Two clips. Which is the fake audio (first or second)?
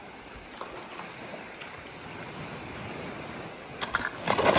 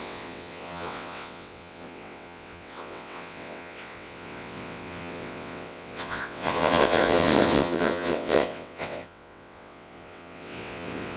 second